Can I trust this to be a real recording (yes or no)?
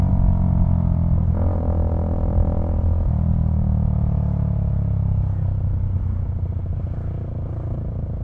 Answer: yes